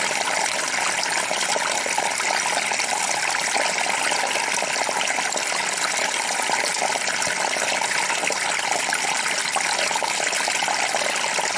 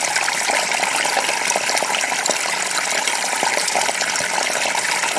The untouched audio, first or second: first